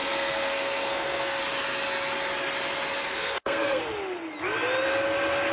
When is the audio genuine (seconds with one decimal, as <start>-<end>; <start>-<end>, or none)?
1.4-3.0; 3.8-5.5